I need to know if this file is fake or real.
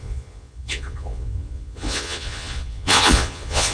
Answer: fake